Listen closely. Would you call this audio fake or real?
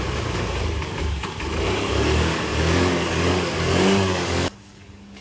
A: fake